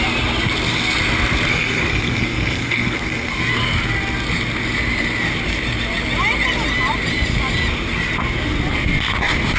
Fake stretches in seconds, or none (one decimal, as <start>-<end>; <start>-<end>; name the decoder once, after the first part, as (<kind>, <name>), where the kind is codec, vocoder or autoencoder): 1.5-3.4 (codec, SNAC)